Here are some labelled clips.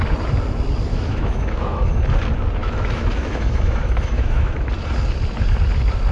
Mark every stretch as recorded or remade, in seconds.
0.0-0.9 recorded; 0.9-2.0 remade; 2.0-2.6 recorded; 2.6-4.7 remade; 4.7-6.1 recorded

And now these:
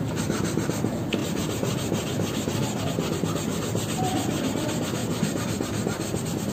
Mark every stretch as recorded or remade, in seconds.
0.0-6.5 recorded

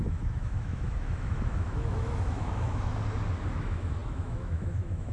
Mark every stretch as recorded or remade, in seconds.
0.0-2.9 remade; 2.9-3.5 recorded; 3.5-5.1 remade

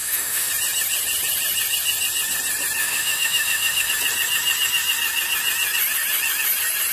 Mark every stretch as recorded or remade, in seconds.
0.0-0.5 remade; 0.5-2.8 recorded; 2.8-3.9 remade; 3.9-6.9 recorded